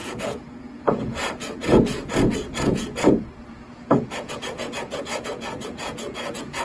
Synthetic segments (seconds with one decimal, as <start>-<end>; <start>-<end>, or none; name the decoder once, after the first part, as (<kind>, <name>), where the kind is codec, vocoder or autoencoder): 0.0-6.6 (vocoder, Vocos)